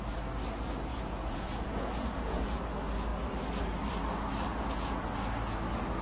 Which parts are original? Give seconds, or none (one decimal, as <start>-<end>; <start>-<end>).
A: 0.0-0.9; 2.6-4.5; 5.1-6.0